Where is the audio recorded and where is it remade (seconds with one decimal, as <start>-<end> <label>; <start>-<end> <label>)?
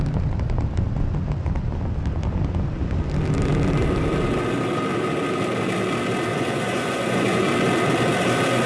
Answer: 0.0-6.3 recorded; 6.3-7.5 remade; 7.5-8.7 recorded